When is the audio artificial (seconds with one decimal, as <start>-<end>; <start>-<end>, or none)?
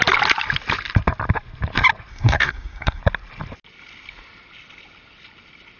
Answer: 2.1-3.0